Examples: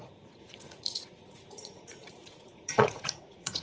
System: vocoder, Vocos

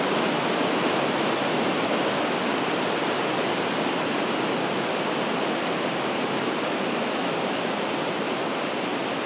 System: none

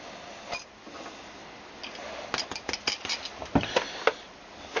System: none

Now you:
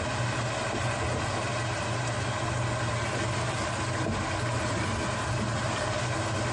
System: none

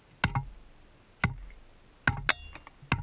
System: none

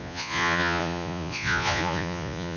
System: vocoder, Vocos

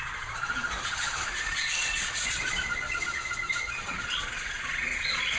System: vocoder, Vocos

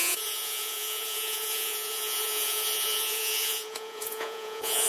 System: vocoder, Vocos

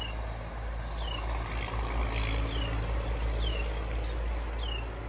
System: none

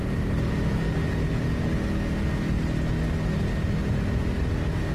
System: none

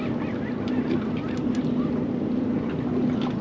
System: none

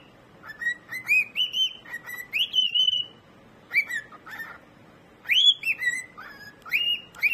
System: none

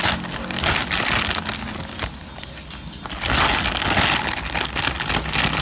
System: none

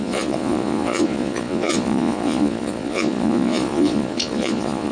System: vocoder, Vocos